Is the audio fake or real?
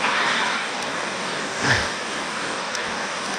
fake